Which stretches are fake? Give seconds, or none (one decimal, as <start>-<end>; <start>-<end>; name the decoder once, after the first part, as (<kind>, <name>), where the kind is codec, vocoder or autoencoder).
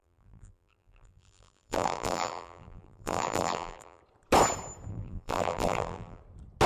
0.0-4.0 (vocoder, BigVGAN v2); 4.9-6.2